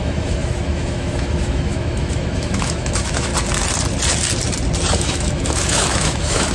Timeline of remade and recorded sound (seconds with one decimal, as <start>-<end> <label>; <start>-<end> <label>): 0.0-3.3 remade; 3.3-5.0 recorded; 5.0-6.5 remade